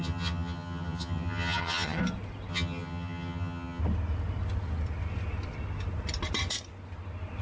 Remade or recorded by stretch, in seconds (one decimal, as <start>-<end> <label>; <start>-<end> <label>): 0.0-2.0 remade; 2.0-2.5 recorded; 2.5-3.8 remade; 3.8-7.4 recorded